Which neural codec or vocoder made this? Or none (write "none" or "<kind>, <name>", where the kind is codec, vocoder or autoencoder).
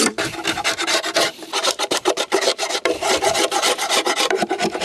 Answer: vocoder, BigVGAN v2